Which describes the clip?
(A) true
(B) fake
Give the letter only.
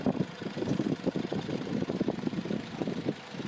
B